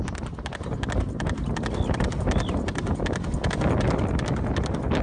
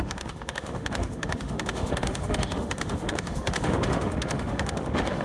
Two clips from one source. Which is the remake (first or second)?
second